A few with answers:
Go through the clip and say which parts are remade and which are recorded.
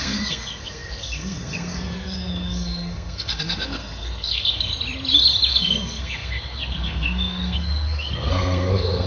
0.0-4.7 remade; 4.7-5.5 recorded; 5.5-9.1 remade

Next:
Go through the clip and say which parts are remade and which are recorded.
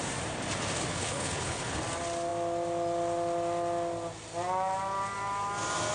0.0-0.9 recorded; 0.9-1.7 remade; 1.7-5.9 recorded